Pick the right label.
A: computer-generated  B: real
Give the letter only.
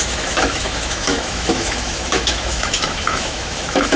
A